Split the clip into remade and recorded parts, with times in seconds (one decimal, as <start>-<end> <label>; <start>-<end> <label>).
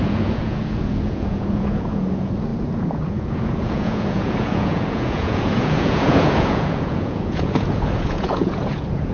0.0-9.1 remade